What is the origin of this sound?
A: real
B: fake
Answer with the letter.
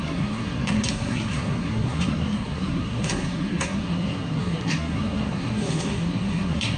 B